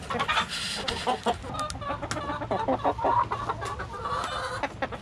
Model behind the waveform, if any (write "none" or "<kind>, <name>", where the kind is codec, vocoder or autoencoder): none